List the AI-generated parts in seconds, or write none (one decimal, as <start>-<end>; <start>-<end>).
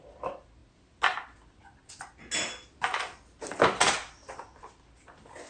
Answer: none